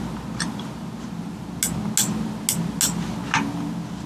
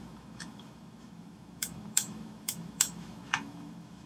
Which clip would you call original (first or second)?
first